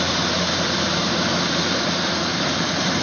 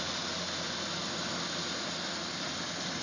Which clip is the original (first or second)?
second